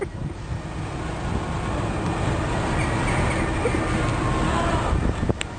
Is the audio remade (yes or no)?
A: no